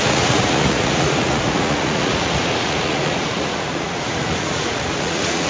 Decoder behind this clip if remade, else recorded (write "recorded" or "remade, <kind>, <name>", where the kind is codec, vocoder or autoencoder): remade, vocoder, Vocos